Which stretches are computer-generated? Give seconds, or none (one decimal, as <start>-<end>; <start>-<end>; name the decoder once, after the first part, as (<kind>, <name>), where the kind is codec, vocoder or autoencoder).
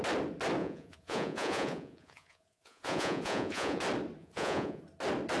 0.6-3.8 (vocoder, Vocos); 4.2-4.8